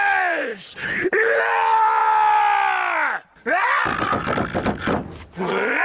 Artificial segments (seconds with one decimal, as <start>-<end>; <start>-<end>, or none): 0.5-1.4